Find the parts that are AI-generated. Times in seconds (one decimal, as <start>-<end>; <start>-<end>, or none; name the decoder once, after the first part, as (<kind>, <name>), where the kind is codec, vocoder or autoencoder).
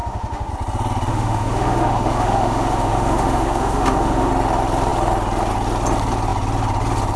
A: 0.0-0.5 (autoencoder, DAC-VAE); 1.1-4.3